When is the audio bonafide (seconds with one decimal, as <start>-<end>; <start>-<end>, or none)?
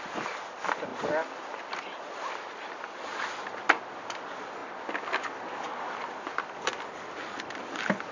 0.0-8.1